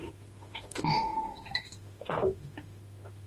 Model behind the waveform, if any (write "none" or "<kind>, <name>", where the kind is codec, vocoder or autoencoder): autoencoder, DAC-VAE